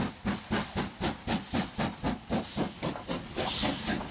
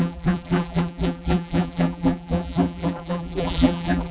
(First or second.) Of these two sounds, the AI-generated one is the second